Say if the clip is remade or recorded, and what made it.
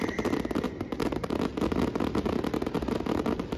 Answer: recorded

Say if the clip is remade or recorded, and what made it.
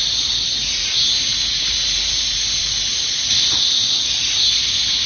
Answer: recorded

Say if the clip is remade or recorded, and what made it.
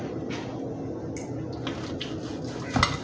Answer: recorded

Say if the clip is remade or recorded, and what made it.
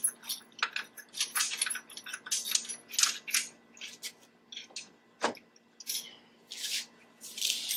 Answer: recorded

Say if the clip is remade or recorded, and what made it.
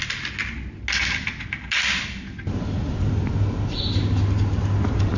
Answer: recorded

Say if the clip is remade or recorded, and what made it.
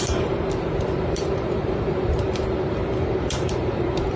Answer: remade, vocoder, BigVGAN v2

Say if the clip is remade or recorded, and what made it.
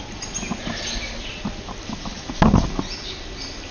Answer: recorded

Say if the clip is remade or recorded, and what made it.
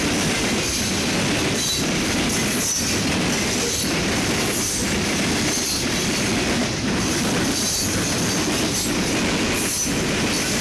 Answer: remade, vocoder, BigVGAN v2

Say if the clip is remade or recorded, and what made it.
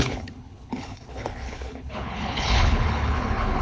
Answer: remade, codec, HILCodec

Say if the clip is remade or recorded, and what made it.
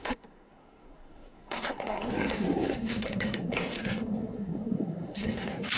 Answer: remade, codec, SNAC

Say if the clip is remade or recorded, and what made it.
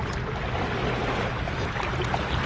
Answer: recorded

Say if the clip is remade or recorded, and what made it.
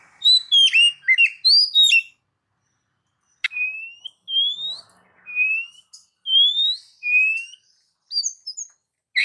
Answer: recorded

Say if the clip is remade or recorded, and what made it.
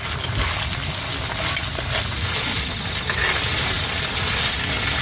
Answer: recorded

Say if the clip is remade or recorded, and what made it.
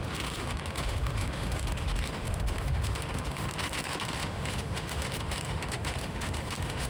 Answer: remade, autoencoder, DAC-VAE